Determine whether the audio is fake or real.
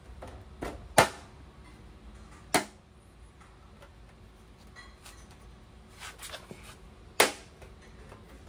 real